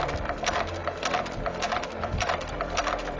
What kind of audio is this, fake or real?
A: fake